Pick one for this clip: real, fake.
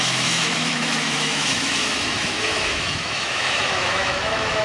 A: fake